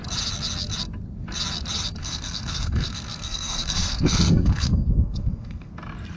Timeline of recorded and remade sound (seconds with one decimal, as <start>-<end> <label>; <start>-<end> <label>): 0.0-2.0 recorded; 2.0-5.7 remade; 5.7-6.2 recorded

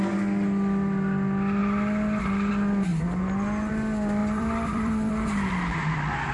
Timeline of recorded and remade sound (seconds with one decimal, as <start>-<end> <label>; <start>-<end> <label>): 0.0-4.2 recorded; 4.2-5.1 remade; 5.1-6.3 recorded

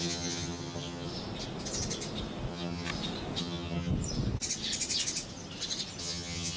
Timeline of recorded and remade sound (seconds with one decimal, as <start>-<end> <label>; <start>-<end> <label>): 0.0-1.1 remade; 1.1-2.5 recorded; 2.5-2.9 remade; 2.9-3.4 recorded; 3.4-3.9 remade; 3.9-6.0 recorded; 6.0-6.6 remade

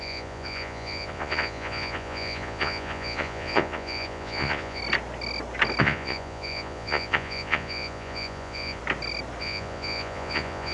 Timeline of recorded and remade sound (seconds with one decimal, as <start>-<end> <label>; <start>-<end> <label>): 0.0-4.8 remade; 4.8-5.8 recorded; 5.8-8.8 remade; 8.8-9.4 recorded; 9.4-10.7 remade

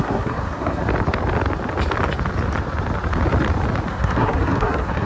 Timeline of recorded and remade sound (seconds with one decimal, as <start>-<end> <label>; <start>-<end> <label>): 0.0-0.8 remade; 0.8-3.9 recorded; 3.9-5.1 remade

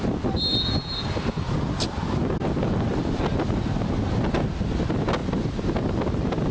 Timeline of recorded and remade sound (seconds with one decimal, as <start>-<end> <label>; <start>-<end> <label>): 0.0-6.5 recorded

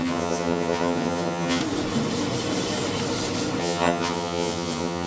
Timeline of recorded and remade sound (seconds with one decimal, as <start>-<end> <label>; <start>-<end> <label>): 0.0-1.6 remade; 1.6-3.6 recorded; 3.6-5.1 remade